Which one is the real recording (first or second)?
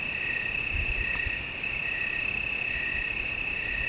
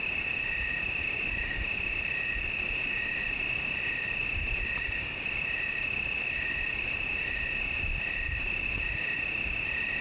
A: first